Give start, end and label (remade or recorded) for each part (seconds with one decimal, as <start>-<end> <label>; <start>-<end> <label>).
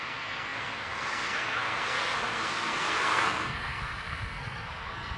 0.0-5.2 remade